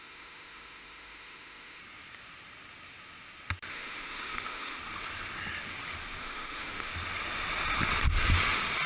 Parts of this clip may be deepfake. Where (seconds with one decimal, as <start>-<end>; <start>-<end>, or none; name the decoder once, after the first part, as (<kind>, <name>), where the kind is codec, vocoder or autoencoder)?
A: 0.0-1.8 (autoencoder, DAC-VAE); 3.7-4.8; 6.2-6.9

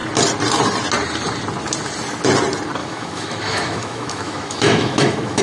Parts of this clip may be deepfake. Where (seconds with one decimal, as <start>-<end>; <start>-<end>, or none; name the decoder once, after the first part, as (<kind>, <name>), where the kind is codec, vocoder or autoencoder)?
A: 2.8-5.4 (autoencoder, DAC-VAE)

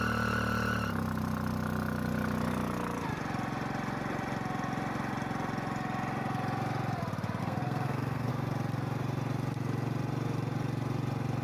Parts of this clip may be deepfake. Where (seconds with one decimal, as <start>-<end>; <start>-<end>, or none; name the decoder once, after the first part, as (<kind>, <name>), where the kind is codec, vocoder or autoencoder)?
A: 7.4-8.3 (codec, SNAC)

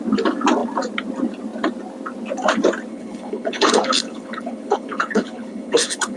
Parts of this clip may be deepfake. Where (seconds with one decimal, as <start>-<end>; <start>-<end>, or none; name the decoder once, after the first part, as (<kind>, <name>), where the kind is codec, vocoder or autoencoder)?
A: 2.9-6.2 (codec, HILCodec)

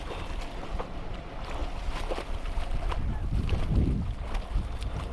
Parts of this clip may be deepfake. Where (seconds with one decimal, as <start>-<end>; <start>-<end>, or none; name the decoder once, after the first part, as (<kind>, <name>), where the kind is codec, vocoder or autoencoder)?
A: none

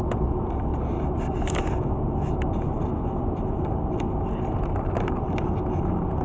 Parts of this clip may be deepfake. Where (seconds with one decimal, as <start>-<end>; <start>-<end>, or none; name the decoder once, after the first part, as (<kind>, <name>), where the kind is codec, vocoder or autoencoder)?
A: none